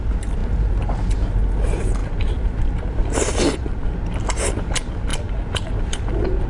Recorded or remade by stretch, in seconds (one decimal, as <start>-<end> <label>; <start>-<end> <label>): 0.0-2.0 recorded; 2.0-3.9 remade; 3.9-6.5 recorded